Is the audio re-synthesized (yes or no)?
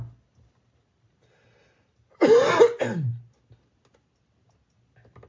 no